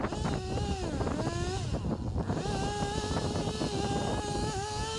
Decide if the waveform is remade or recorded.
recorded